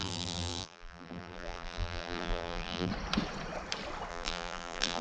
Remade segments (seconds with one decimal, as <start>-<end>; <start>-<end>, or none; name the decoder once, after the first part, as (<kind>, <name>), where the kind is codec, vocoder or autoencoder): 0.0-2.9 (vocoder, BigVGAN v2); 4.1-5.0